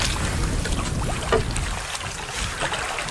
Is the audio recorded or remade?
recorded